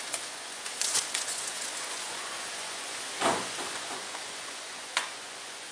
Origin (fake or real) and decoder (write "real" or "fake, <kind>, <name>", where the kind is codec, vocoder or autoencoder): fake, vocoder, Vocos